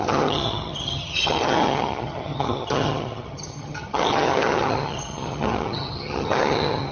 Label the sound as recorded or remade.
remade